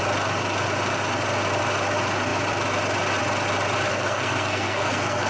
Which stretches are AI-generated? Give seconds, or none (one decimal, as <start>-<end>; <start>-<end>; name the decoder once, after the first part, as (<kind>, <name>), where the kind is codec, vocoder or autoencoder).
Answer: 3.9-5.3 (codec, SNAC)